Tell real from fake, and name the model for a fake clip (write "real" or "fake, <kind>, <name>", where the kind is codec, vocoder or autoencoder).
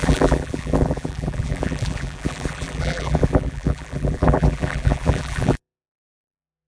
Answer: fake, vocoder, BigVGAN v2